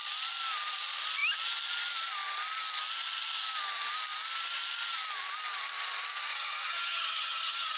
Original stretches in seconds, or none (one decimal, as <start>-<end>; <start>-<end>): 0.0-6.3